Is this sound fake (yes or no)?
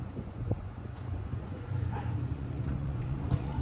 yes